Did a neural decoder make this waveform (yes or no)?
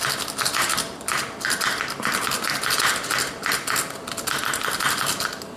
no